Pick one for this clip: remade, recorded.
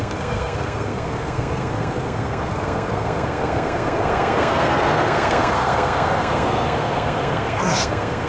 remade